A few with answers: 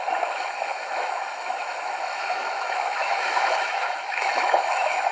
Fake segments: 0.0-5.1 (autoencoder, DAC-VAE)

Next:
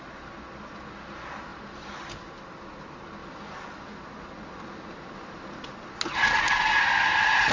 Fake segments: none